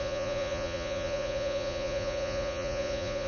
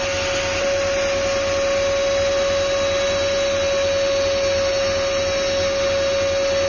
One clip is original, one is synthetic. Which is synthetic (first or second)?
first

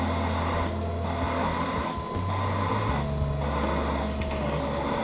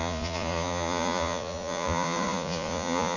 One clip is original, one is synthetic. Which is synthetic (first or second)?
second